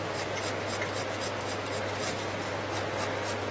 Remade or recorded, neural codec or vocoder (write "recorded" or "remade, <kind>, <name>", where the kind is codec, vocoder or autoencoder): recorded